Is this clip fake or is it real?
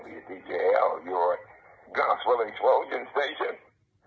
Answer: real